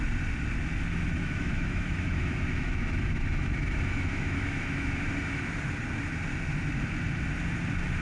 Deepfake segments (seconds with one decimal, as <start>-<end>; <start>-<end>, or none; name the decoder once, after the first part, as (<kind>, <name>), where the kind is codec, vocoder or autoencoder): 1.2-5.0 (autoencoder, DAC-VAE)